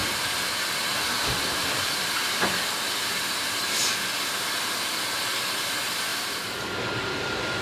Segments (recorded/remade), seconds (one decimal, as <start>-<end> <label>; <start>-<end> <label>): 0.0-4.6 remade; 4.6-6.1 recorded; 6.1-7.6 remade